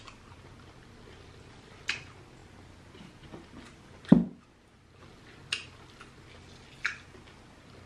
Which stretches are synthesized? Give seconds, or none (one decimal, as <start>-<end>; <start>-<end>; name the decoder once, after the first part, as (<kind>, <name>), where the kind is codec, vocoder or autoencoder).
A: none